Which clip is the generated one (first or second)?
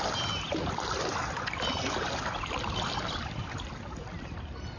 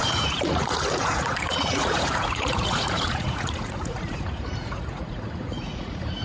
second